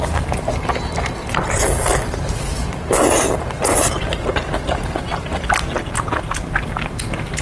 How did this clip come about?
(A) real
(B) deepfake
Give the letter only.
A